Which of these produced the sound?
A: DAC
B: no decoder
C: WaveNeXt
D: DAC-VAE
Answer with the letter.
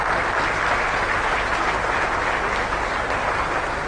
B